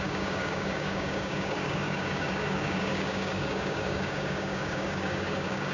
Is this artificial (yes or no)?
yes